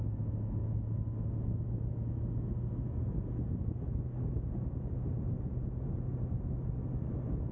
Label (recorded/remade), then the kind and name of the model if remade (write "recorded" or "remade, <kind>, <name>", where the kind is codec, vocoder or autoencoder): recorded